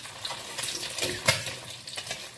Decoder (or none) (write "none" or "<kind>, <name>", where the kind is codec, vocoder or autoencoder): none